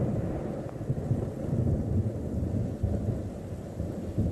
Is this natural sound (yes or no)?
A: yes